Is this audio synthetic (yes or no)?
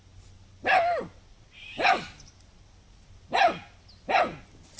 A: no